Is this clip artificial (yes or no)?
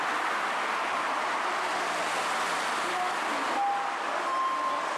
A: no